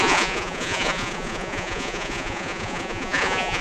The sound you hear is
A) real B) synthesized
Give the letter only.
B